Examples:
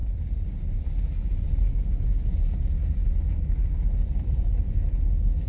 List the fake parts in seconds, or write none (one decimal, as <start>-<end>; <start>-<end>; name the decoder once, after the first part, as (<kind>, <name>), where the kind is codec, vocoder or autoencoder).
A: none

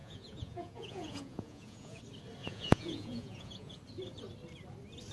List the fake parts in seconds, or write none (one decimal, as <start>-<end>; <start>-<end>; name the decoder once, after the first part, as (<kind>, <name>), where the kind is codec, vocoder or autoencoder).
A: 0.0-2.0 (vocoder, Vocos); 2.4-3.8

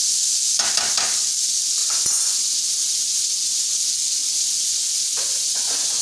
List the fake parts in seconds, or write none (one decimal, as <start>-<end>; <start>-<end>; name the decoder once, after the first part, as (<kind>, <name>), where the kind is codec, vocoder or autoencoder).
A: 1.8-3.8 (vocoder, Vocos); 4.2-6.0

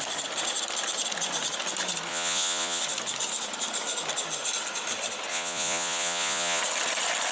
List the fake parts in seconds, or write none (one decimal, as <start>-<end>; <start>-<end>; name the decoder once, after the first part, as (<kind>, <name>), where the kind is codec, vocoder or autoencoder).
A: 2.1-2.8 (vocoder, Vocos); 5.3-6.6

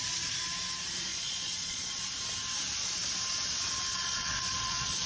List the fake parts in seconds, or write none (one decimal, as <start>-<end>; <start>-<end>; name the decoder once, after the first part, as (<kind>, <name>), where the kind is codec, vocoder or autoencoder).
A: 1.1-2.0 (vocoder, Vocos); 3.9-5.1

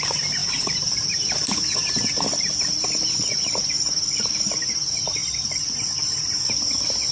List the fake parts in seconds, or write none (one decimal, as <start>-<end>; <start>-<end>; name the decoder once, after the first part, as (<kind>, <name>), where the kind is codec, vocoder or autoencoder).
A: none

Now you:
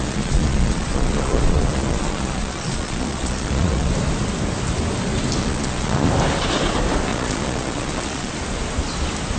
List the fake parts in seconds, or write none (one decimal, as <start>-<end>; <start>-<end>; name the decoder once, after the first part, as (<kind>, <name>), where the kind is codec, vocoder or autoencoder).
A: 0.0-3.9 (vocoder, Vocos); 5.4-6.1; 7.1-8.3

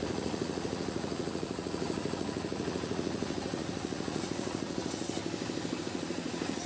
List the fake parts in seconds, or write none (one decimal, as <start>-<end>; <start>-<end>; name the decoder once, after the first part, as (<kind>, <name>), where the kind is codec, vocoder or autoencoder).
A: 0.0-5.2 (vocoder, Vocos); 5.8-6.7